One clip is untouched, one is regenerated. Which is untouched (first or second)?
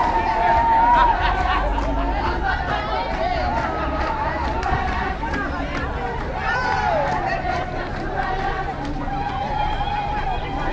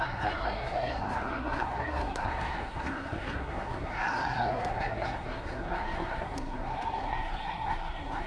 first